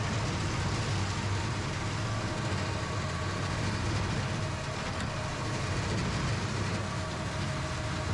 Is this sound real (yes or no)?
yes